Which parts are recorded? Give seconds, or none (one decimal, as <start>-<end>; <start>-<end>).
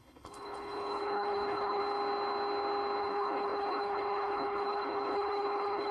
1.8-3.0